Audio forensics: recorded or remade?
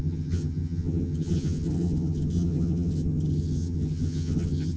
remade